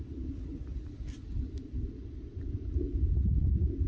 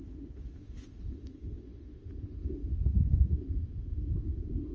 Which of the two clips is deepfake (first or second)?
second